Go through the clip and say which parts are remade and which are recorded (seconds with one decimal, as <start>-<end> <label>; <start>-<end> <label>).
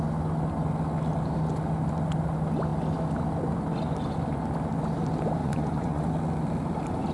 0.0-5.4 recorded; 5.4-6.1 remade; 6.1-7.1 recorded